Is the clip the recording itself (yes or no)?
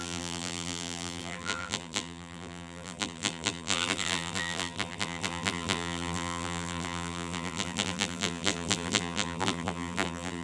no